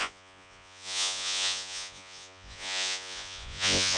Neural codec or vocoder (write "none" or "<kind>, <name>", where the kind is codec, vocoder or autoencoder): vocoder, Vocos